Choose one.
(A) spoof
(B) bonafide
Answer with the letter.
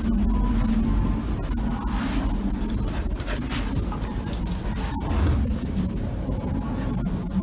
B